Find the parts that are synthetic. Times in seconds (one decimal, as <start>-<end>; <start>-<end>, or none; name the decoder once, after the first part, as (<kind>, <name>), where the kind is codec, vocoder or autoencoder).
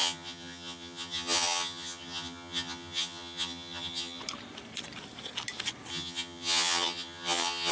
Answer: 0.0-4.2 (vocoder, HiFi-GAN); 5.9-7.7